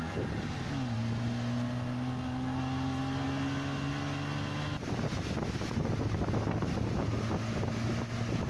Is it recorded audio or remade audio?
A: recorded